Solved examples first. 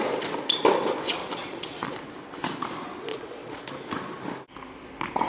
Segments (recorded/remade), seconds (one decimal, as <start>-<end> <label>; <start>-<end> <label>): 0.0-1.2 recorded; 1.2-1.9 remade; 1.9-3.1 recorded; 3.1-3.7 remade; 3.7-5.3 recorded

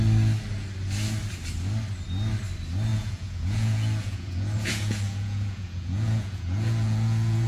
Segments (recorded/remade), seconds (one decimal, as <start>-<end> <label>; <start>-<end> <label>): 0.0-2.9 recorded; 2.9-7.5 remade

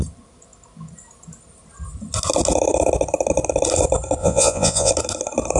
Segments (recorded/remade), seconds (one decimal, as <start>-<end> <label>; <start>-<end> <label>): 0.0-4.2 recorded; 4.2-4.9 remade; 4.9-5.6 recorded